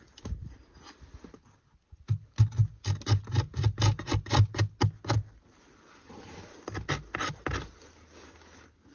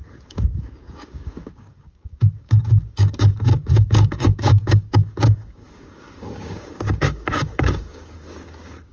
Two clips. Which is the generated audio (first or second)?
second